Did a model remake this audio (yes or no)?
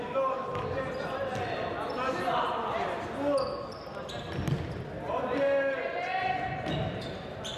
no